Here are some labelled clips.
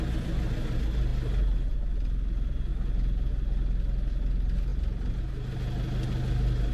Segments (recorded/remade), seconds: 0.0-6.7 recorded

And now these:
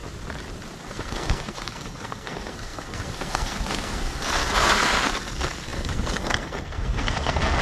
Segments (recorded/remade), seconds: 0.0-0.8 recorded; 0.8-7.6 remade

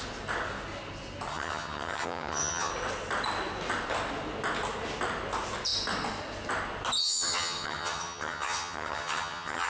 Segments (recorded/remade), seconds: 0.0-1.3 recorded; 1.3-2.7 remade; 2.7-7.0 recorded; 7.0-9.7 remade

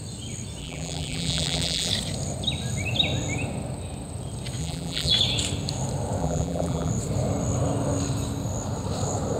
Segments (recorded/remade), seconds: 0.0-0.6 recorded; 0.6-1.9 remade; 1.9-4.6 recorded; 4.6-5.1 remade; 5.1-6.2 recorded; 6.2-6.9 remade; 6.9-9.4 recorded

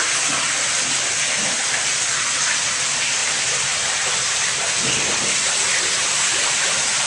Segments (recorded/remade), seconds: 0.0-3.2 recorded; 3.2-7.1 remade

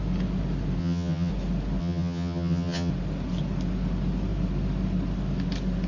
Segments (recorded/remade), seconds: 0.0-0.8 recorded; 0.8-1.3 remade; 1.3-1.8 recorded; 1.8-2.9 remade; 2.9-5.9 recorded